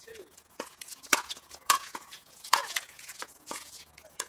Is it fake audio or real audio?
fake